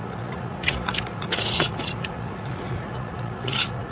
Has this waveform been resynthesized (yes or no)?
yes